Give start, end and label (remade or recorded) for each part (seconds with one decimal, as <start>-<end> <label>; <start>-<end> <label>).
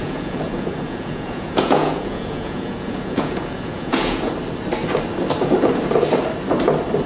0.0-4.3 remade; 4.3-7.1 recorded